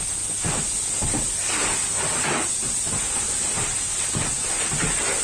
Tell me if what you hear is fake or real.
real